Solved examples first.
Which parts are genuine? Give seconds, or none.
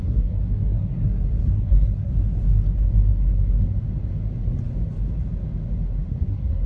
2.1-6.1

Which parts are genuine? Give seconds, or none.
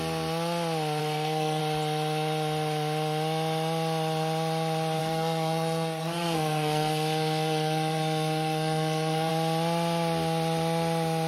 0.0-1.0; 1.6-5.0; 9.3-11.3